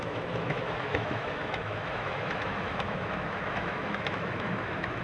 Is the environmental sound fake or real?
fake